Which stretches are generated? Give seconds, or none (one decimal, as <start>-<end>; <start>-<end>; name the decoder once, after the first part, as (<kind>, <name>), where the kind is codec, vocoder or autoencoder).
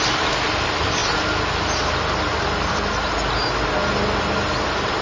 none